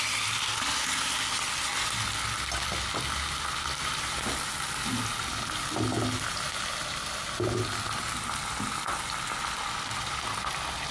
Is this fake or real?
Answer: real